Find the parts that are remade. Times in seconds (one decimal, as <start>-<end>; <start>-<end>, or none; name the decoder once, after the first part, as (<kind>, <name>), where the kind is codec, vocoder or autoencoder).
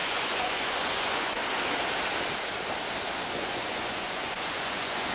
0.0-1.4 (vocoder, Vocos); 3.3-5.1